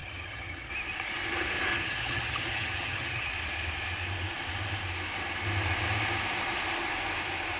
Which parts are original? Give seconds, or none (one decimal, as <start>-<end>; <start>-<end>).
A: 0.7-1.7; 3.3-7.6